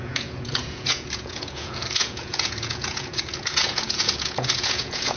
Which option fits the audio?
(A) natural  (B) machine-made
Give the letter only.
B